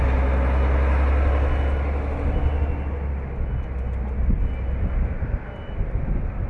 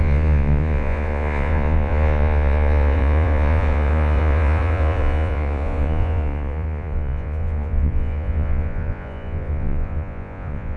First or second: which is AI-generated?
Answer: second